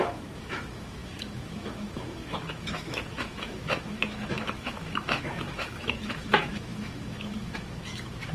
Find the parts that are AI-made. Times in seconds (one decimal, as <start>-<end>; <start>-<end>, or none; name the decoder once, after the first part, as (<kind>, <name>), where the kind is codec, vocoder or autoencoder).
0.0-8.3 (autoencoder, DAC-VAE)

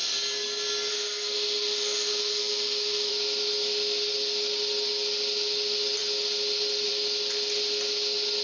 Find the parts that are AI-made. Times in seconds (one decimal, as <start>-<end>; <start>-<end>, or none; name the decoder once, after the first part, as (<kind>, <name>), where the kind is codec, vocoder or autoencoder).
0.9-3.1 (autoencoder, DAC-VAE)